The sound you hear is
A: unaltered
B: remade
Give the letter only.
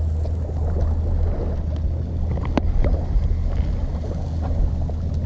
A